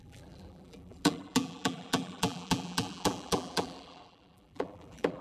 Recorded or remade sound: remade